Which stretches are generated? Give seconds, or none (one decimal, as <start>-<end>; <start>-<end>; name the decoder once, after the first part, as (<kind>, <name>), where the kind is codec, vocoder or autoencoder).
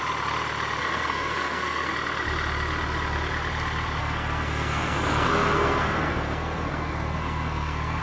0.8-1.9 (codec, SNAC); 4.0-8.0